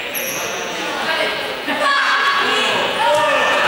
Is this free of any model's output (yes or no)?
no